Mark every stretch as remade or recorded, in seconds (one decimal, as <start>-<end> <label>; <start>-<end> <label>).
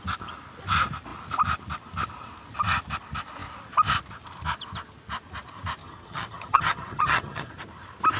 0.0-5.8 recorded; 5.8-7.5 remade; 7.5-8.2 recorded